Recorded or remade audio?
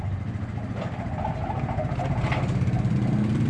recorded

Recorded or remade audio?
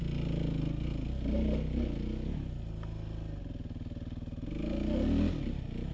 recorded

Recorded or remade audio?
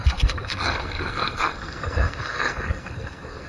remade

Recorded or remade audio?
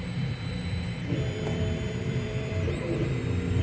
remade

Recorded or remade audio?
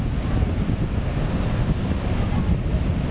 recorded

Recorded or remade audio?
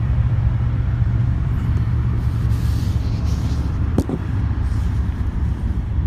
remade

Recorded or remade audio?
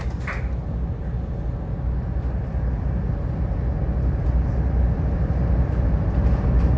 recorded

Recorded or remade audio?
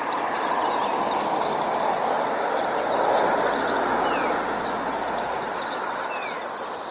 recorded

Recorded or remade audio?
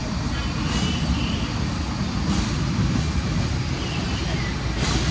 recorded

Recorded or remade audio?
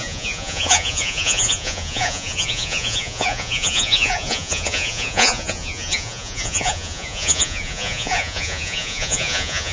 remade